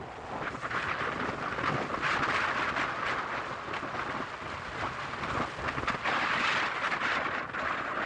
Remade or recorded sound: recorded